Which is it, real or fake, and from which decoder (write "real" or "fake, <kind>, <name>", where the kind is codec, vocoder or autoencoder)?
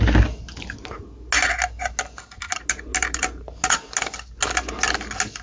real